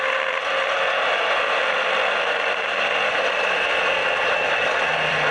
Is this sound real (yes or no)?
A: no